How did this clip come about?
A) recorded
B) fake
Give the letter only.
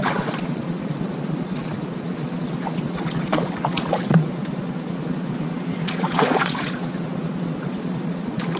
B